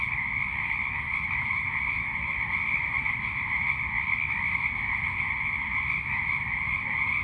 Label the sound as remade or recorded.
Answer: recorded